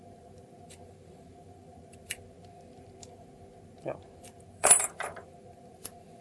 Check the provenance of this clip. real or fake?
fake